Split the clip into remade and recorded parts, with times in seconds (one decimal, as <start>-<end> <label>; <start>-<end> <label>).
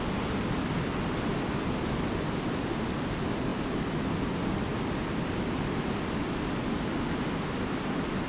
0.0-8.3 recorded